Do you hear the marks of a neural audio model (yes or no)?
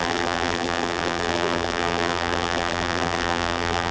yes